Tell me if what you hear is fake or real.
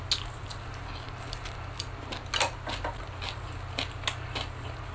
real